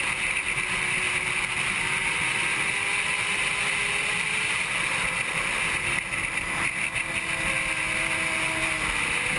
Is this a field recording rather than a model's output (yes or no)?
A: yes